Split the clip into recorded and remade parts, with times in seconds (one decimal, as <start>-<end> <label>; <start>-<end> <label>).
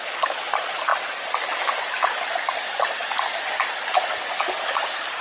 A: 0.0-5.2 recorded